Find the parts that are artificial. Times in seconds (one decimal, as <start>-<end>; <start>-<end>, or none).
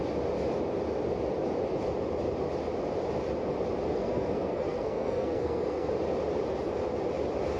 3.9-5.9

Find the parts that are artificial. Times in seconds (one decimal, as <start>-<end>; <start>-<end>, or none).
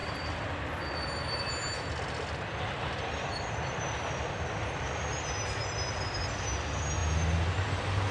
none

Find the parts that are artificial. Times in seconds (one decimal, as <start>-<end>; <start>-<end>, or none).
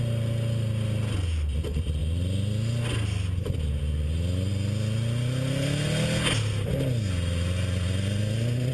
none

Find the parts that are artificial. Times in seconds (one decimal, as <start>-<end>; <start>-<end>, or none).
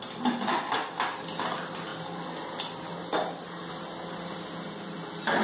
none